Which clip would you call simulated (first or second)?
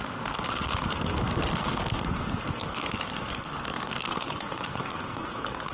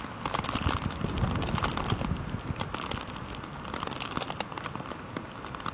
first